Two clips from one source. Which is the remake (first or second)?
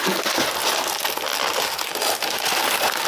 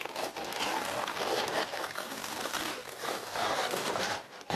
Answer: second